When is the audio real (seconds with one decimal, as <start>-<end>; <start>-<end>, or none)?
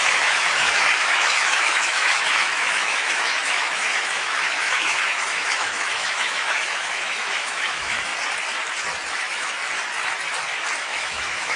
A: 8.1-9.1; 9.6-10.8